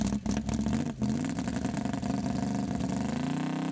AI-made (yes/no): no